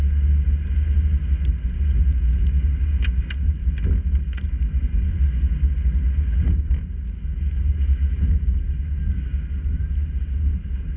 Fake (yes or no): no